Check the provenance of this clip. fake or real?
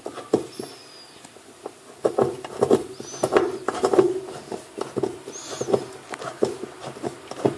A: real